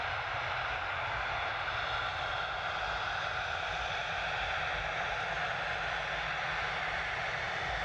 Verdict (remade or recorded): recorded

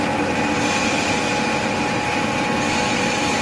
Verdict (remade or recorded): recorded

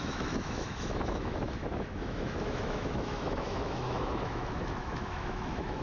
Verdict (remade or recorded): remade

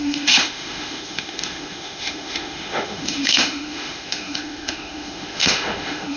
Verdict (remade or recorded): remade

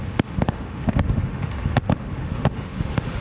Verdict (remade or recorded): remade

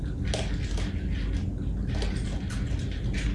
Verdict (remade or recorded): recorded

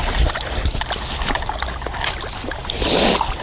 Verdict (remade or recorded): recorded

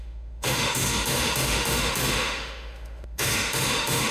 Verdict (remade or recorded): remade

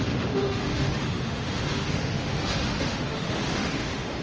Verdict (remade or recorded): remade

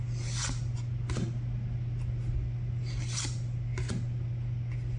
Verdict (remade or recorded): recorded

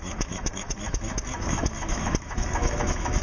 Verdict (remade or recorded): remade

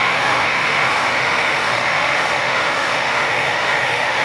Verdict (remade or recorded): remade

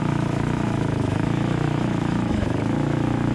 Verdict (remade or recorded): remade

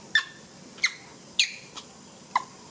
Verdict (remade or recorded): recorded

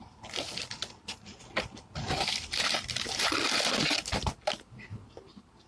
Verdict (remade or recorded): recorded